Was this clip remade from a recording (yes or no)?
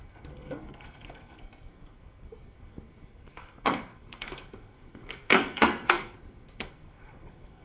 yes